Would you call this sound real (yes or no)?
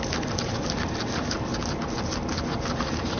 yes